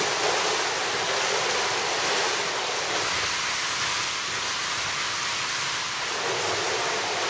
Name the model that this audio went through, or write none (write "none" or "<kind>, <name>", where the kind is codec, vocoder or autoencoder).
none